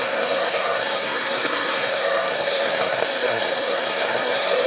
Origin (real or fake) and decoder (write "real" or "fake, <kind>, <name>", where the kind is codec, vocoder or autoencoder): fake, codec, SNAC